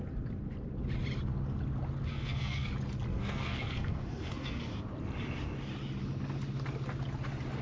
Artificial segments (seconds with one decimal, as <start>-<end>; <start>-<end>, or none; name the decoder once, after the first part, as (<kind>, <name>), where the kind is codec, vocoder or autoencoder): 2.1-2.7 (codec, SNAC); 3.1-4.7